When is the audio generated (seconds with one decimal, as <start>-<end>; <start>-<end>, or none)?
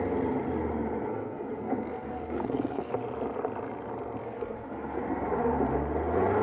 1.1-2.9; 4.2-5.0